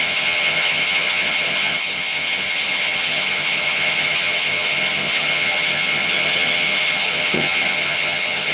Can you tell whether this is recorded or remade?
remade